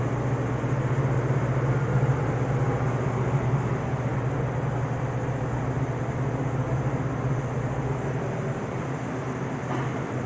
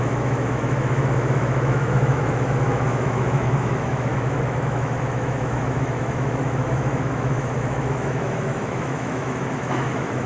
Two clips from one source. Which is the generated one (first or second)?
second